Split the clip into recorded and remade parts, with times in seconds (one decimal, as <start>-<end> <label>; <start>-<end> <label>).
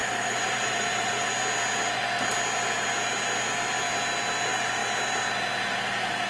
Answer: 0.0-1.3 remade; 1.3-6.3 recorded